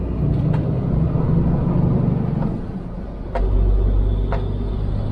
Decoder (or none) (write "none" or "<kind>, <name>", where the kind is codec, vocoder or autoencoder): none